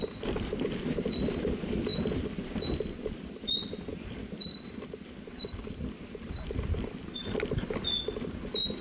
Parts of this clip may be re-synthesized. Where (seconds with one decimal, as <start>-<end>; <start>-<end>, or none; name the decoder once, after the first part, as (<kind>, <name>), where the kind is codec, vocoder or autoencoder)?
3.9-7.0 (vocoder, BigVGAN v2)